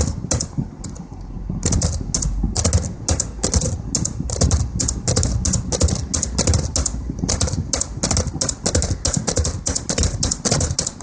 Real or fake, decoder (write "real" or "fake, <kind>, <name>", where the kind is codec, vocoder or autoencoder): real